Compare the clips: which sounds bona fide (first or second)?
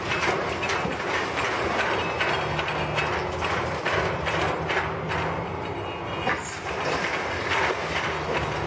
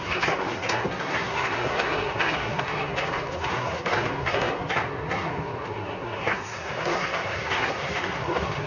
first